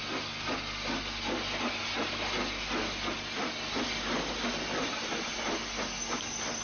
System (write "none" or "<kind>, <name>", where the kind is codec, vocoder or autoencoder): none